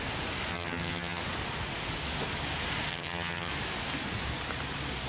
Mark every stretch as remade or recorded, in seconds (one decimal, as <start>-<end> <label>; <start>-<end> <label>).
0.0-0.5 recorded; 0.5-1.2 remade; 1.2-2.9 recorded; 2.9-3.5 remade; 3.5-5.1 recorded